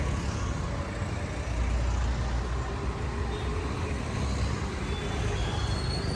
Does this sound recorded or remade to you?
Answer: recorded